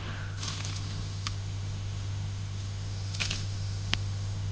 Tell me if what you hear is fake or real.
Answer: fake